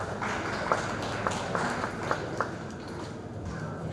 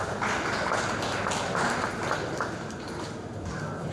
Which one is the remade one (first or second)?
second